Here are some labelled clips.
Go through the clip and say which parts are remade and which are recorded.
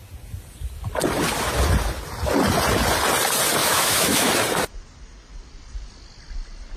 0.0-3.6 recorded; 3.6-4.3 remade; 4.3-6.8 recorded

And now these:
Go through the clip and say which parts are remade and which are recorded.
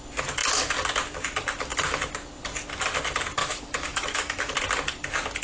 0.0-3.4 recorded; 3.4-4.5 remade; 4.5-5.4 recorded